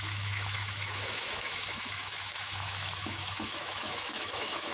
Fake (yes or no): yes